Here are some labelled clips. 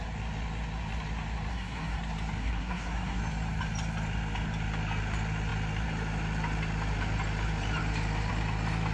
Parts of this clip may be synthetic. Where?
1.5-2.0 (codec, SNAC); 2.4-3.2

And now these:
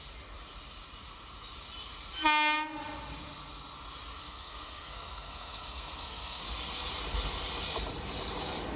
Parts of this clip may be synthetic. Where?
4.2-6.4 (codec, SNAC)

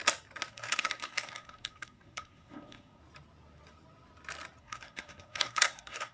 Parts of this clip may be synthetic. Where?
0.5-3.0 (codec, SNAC); 4.6-6.1

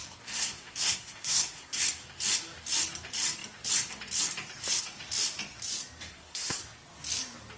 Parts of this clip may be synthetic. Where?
0.0-1.8 (codec, SNAC); 6.1-6.6

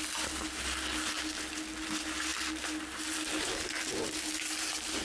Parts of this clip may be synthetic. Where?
none

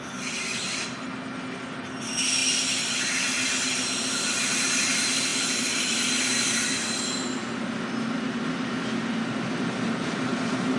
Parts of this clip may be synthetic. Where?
none

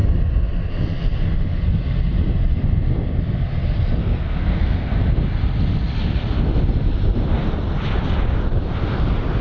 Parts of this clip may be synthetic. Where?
4.0-4.9 (codec, SNAC)